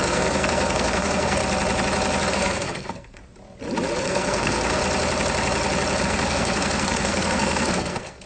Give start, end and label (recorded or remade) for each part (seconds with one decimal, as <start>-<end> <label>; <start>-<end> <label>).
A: 0.0-1.4 remade; 1.4-2.3 recorded; 2.3-3.2 remade; 3.2-4.0 recorded; 4.0-4.8 remade; 4.8-6.0 recorded; 6.0-8.3 remade

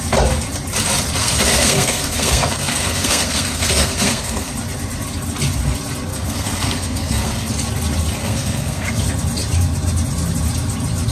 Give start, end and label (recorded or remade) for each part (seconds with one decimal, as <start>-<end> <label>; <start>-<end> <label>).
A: 0.0-1.2 recorded; 1.2-4.5 remade; 4.5-6.1 recorded; 6.1-7.5 remade; 7.5-8.2 recorded; 8.2-9.0 remade; 9.0-11.1 recorded

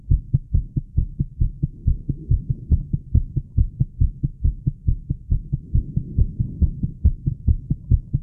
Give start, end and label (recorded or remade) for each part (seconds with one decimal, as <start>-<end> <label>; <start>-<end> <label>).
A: 0.0-1.8 recorded; 1.8-2.4 remade; 2.4-8.2 recorded

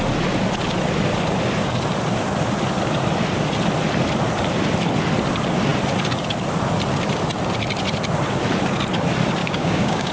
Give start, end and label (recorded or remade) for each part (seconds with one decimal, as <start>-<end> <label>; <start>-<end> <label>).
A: 0.0-9.4 recorded; 9.4-10.1 remade

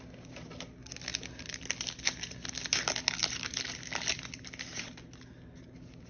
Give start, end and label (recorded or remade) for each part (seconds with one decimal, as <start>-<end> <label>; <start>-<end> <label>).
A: 0.0-6.1 recorded